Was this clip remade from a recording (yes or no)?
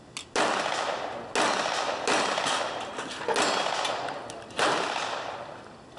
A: no